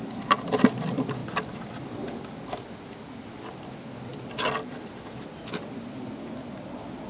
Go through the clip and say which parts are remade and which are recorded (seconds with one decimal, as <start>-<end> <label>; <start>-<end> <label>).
0.0-7.1 recorded